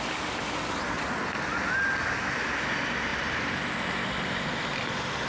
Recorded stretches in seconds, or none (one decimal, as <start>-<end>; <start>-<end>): 0.0-5.3